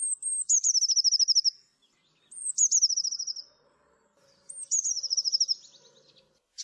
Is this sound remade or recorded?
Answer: recorded